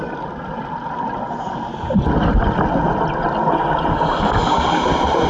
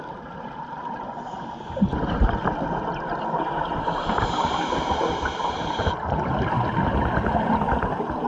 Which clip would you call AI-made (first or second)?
second